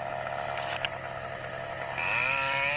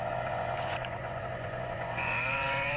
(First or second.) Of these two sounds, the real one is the first